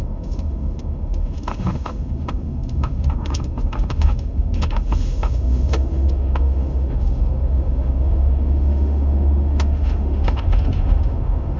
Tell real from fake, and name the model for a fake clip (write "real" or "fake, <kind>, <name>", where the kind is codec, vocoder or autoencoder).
fake, autoencoder, DAC-VAE